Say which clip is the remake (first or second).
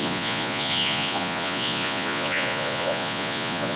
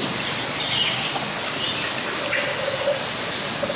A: first